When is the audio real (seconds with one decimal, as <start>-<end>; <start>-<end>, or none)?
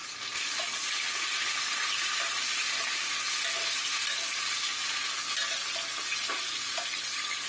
0.0-7.5